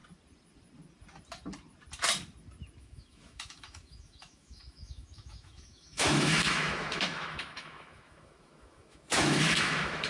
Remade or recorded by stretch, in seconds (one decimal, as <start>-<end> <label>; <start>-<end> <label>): 0.0-2.8 recorded; 2.8-10.1 remade